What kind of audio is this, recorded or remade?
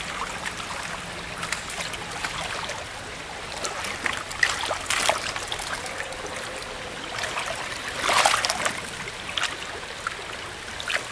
recorded